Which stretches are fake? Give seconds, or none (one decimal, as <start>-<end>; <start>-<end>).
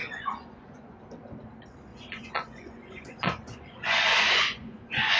0.0-1.0; 1.9-5.2